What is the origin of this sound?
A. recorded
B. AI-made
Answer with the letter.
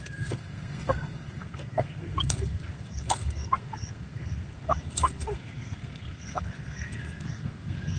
B